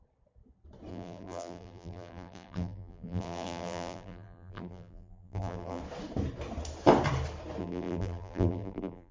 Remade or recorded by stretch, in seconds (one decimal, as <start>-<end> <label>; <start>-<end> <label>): 0.0-0.9 recorded; 0.9-5.8 remade; 5.8-7.6 recorded; 7.6-9.1 remade